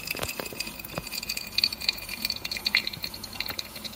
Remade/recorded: remade